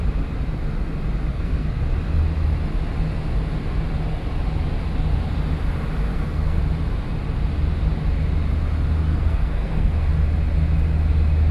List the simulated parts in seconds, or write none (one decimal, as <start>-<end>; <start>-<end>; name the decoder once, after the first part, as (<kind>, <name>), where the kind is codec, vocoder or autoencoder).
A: 1.3-1.8 (codec, SNAC); 6.1-6.6; 9.1-10.1